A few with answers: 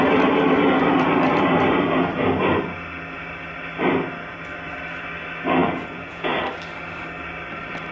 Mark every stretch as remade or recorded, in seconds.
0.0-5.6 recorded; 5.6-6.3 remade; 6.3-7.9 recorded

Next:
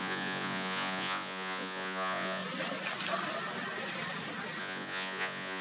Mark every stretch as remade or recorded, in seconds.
0.0-2.4 remade; 2.4-4.6 recorded; 4.6-5.6 remade

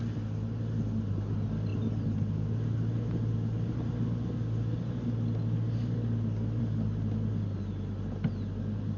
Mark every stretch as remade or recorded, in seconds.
0.0-9.0 recorded

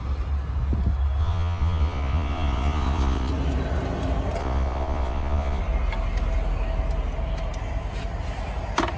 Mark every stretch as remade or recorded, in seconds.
0.0-1.2 recorded; 1.2-3.3 remade; 3.3-4.4 recorded; 4.4-5.6 remade; 5.6-9.0 recorded

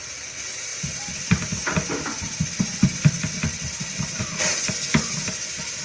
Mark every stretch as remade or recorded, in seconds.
0.0-5.8 recorded

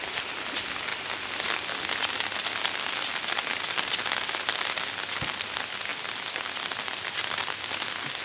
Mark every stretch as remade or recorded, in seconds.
0.0-8.2 recorded

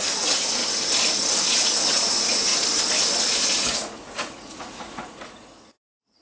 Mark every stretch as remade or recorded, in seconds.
0.0-0.6 remade; 0.6-1.5 recorded; 1.5-2.5 remade; 2.5-3.7 recorded; 3.7-6.2 remade